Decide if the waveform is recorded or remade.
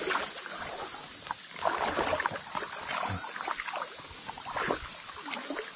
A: recorded